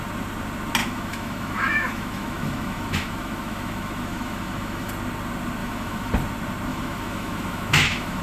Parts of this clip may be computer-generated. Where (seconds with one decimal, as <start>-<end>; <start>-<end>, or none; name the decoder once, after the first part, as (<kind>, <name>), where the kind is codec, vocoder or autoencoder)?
0.8-4.9 (autoencoder, DAC-VAE); 5.6-6.1; 6.7-8.2